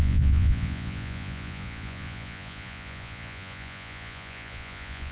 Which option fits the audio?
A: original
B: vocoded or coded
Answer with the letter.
B